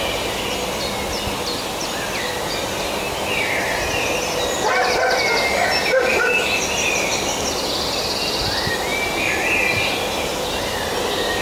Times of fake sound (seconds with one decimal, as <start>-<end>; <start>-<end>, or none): none